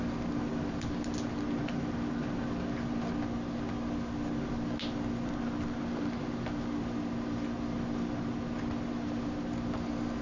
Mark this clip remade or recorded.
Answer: recorded